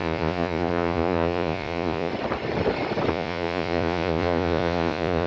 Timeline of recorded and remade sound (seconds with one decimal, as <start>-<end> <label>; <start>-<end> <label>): 0.0-2.1 remade; 2.1-3.1 recorded; 3.1-5.3 remade